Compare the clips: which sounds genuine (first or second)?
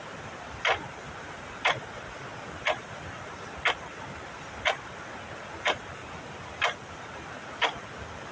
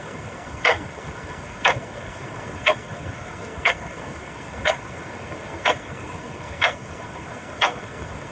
first